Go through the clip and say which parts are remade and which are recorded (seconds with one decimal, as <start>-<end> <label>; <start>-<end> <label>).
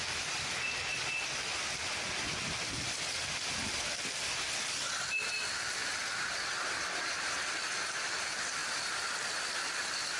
0.0-10.2 recorded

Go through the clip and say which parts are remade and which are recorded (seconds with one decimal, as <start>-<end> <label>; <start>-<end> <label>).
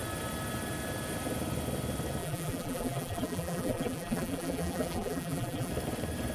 0.0-2.2 recorded; 2.2-5.7 remade; 5.7-6.3 recorded